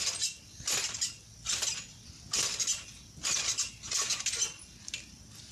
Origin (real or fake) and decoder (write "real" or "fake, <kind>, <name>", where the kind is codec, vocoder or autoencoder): real